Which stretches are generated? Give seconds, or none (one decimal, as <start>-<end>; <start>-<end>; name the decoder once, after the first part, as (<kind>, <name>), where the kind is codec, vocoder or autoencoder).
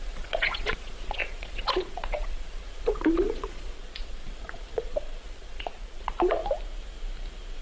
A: 0.0-6.4 (vocoder, Vocos)